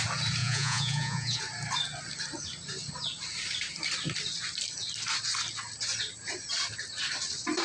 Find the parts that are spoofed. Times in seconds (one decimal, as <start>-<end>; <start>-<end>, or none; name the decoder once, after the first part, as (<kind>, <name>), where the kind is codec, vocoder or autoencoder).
0.4-1.4 (vocoder, Vocos)